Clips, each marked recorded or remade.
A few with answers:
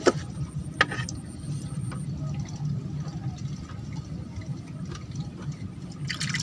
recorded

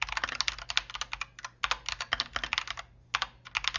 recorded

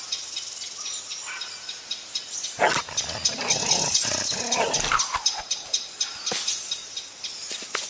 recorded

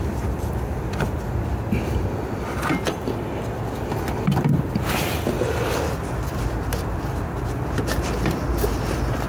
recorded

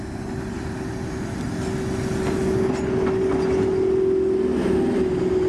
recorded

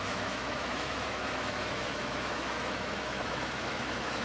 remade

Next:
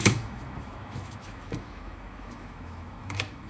remade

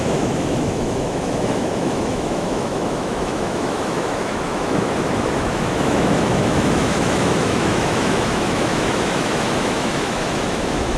remade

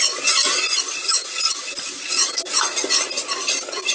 recorded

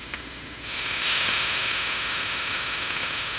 remade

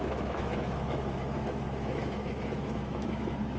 remade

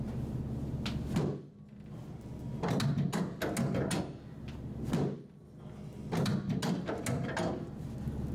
recorded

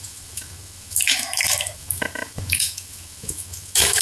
remade